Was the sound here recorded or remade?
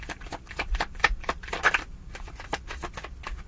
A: recorded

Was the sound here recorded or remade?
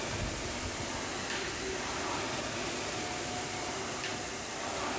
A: recorded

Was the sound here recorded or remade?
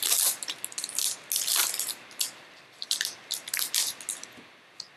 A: recorded